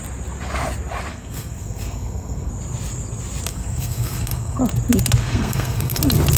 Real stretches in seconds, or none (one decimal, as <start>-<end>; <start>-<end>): 0.0-1.1; 2.5-3.5; 4.6-5.2; 6.0-6.4